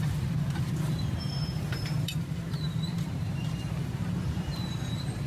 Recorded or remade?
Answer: remade